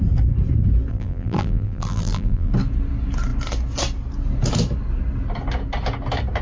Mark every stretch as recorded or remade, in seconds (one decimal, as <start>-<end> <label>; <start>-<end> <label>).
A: 0.0-0.9 recorded; 0.9-2.5 remade; 2.5-6.4 recorded